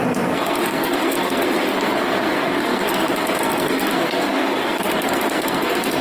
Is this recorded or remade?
remade